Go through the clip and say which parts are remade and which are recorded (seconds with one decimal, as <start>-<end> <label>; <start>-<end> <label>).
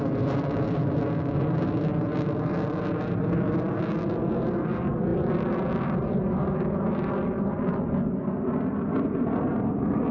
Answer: 0.0-10.1 recorded